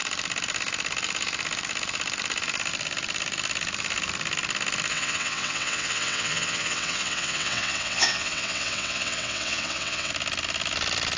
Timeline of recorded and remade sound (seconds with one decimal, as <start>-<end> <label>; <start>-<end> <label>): 0.0-4.9 recorded; 4.9-10.1 remade; 10.1-11.2 recorded